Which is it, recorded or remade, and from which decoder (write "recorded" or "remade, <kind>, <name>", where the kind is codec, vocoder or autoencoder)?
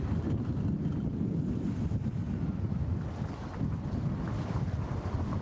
recorded